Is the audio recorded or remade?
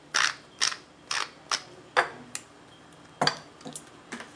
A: recorded